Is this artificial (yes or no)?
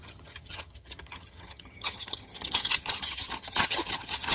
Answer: yes